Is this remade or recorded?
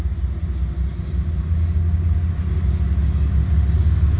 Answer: recorded